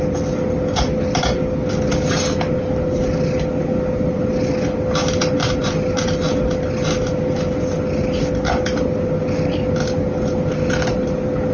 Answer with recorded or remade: recorded